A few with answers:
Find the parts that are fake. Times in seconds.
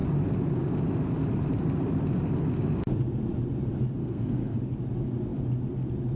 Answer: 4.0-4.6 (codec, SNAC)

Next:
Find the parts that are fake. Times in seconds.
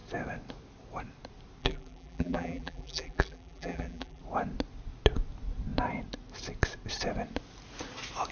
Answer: 1.6-4.2 (vocoder, BigVGAN v2)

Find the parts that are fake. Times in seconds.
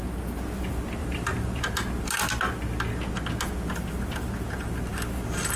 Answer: 1.0-1.6 (vocoder, BigVGAN v2)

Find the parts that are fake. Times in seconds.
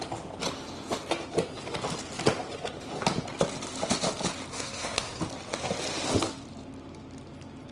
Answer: 4.5-5.2 (codec, SNAC)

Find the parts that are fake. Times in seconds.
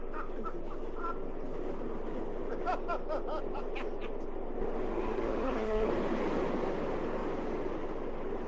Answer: 4.9-5.9 (codec, SNAC)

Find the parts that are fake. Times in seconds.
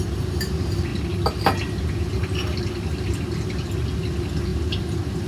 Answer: none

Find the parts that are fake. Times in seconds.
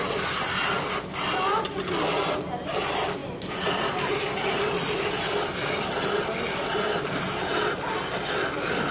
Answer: none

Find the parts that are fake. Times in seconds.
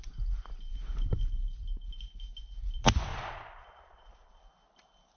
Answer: 3.1-4.4 (vocoder, Vocos)